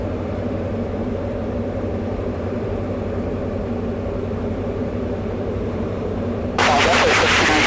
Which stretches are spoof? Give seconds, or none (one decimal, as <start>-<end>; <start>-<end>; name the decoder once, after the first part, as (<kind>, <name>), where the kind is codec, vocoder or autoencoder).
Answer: 0.0-3.4 (vocoder, BigVGAN v2); 4.5-7.7